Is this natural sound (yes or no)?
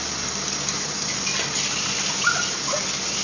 yes